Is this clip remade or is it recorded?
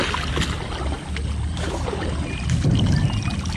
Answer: recorded